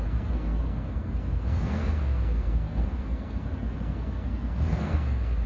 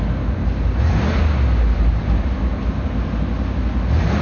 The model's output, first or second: first